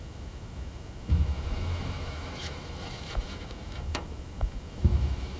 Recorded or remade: remade